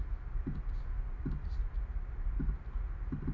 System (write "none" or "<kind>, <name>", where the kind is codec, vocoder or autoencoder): none